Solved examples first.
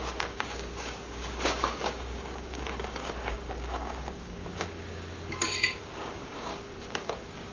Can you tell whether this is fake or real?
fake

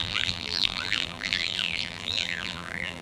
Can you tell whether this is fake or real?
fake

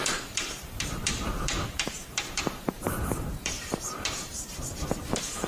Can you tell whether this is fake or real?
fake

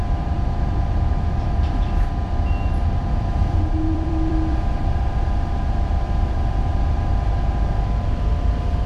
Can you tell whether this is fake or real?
fake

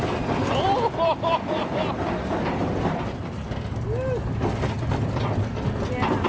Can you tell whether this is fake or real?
real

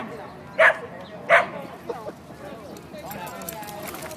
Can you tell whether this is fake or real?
real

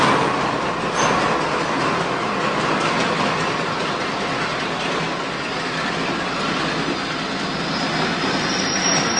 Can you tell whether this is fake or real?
real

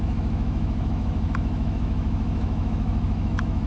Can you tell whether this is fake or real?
fake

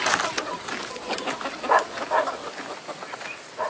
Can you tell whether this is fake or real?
real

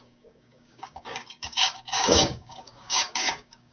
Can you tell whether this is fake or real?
fake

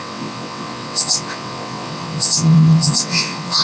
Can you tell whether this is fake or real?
fake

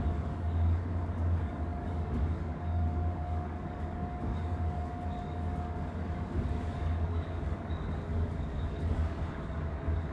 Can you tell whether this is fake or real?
fake